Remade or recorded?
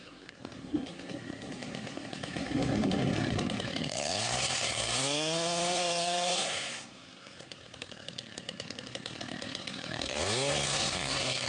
remade